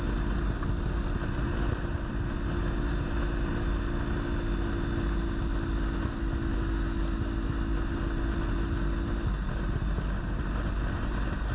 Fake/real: real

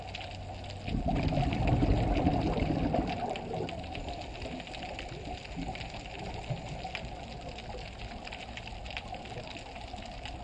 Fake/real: real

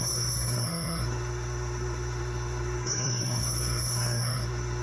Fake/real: fake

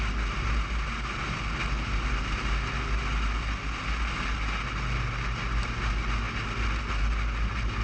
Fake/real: real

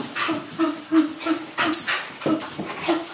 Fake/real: real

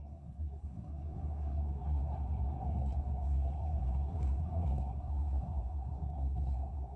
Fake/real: fake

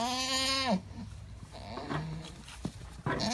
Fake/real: real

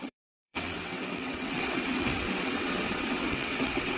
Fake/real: fake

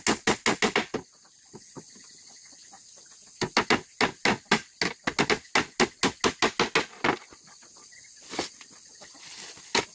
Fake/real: real